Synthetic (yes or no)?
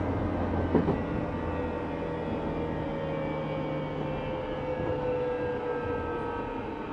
no